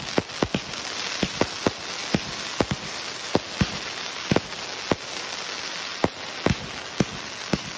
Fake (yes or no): no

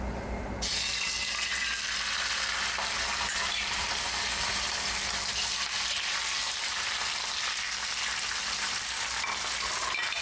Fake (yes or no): no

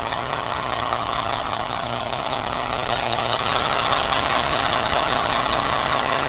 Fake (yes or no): yes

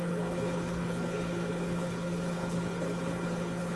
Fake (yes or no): yes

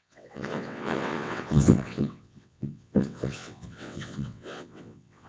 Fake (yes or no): yes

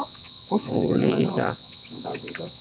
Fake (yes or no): yes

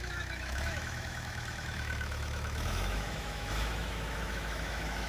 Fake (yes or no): yes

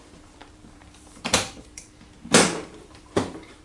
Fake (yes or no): yes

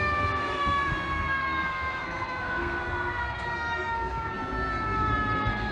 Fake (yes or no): yes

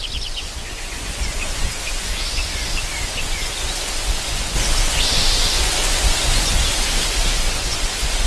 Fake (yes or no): yes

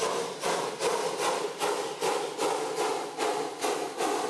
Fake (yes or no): no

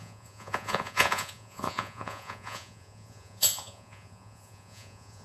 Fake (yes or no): yes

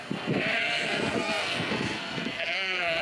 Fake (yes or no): yes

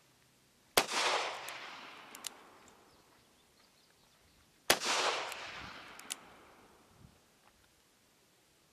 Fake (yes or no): no